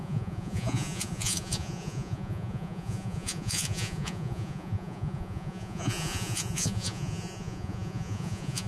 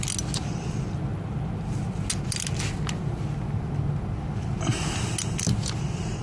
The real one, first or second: second